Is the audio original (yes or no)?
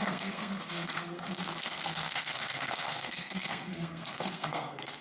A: no